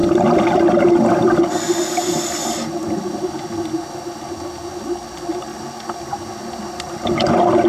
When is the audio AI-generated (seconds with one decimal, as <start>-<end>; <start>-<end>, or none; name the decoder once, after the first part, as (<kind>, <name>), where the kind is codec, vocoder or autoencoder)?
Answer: 0.0-2.7 (vocoder, BigVGAN v2); 5.5-7.3